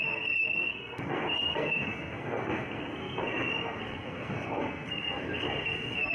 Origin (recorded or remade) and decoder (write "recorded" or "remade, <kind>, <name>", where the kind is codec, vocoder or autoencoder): remade, codec, SNAC